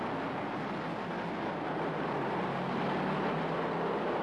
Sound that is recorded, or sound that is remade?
recorded